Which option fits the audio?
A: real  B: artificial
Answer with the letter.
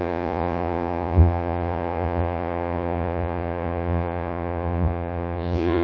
B